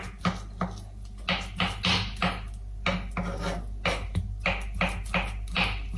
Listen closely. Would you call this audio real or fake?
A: real